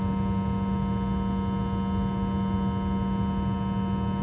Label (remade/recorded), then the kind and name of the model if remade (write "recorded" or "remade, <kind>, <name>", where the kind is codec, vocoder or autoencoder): recorded